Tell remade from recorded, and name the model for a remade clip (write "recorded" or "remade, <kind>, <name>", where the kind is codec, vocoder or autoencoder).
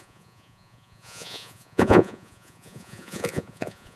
remade, vocoder, Vocos